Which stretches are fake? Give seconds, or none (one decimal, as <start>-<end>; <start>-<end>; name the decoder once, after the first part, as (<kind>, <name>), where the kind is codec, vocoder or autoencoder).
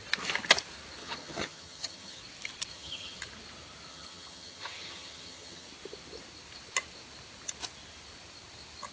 1.0-2.2 (vocoder, HiFi-GAN); 2.7-3.2; 3.9-5.7